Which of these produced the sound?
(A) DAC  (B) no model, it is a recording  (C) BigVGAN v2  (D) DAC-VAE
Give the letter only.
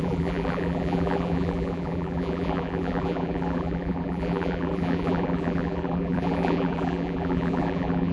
C